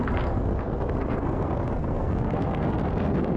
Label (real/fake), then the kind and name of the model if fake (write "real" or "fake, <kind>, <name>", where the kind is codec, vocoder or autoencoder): fake, codec, SNAC